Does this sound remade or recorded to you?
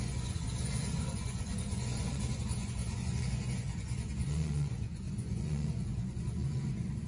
remade